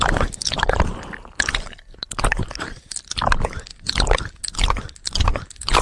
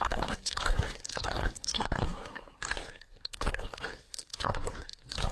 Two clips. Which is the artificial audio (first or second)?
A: second